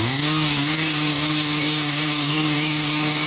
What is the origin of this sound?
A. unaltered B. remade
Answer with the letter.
B